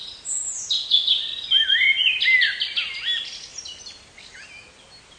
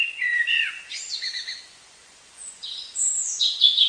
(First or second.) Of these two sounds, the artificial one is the second